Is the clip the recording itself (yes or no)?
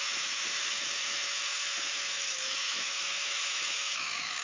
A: no